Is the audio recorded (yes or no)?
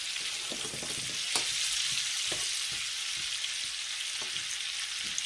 yes